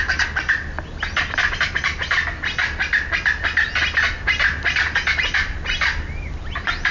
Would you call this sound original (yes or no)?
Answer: yes